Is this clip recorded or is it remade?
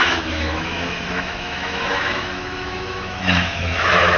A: remade